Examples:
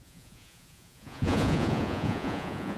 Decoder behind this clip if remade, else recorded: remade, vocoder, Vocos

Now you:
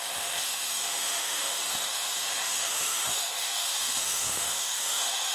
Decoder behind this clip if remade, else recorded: remade, autoencoder, DAC-VAE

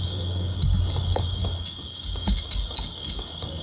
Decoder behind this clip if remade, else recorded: remade, codec, DAC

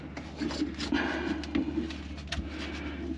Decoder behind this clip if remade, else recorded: recorded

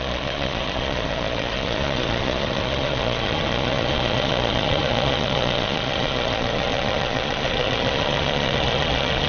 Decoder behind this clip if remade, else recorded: remade, vocoder, Vocos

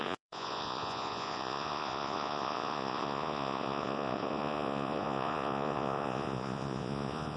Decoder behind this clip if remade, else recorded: remade, vocoder, Vocos